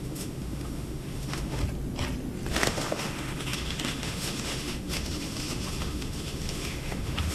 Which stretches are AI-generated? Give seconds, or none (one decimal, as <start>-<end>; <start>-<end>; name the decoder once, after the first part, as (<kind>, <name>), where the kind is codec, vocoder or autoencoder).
0.0-1.6 (autoencoder, DAC-VAE); 2.5-7.3